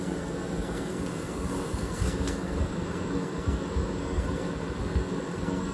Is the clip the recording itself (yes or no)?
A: no